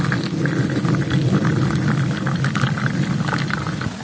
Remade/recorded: recorded